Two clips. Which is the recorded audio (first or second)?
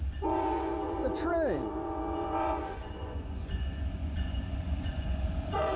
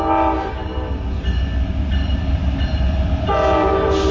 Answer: second